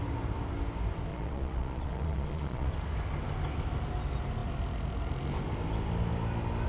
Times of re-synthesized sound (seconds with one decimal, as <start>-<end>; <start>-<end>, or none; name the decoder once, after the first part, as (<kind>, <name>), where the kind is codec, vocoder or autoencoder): 1.1-2.7 (vocoder, Vocos)